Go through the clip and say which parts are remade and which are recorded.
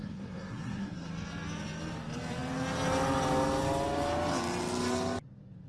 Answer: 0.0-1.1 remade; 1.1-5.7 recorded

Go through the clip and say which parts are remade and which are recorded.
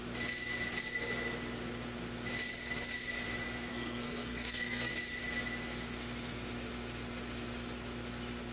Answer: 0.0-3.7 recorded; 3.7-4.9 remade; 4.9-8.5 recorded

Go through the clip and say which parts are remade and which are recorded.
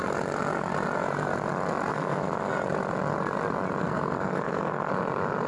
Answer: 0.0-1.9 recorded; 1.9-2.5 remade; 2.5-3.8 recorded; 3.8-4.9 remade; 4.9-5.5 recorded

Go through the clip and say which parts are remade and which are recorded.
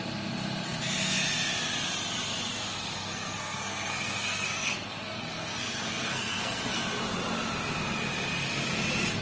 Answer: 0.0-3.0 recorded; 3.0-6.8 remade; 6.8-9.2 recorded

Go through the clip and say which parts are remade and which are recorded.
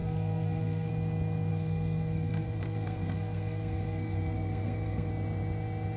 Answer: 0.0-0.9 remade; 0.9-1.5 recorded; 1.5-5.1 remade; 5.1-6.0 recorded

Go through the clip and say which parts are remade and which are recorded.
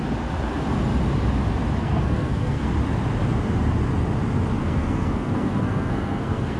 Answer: 0.0-1.8 recorded; 1.8-2.7 remade; 2.7-4.6 recorded; 4.6-6.6 remade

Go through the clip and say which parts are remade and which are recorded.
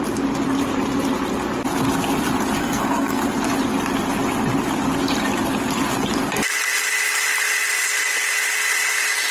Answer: 0.0-2.6 recorded; 2.6-3.2 remade; 3.2-9.3 recorded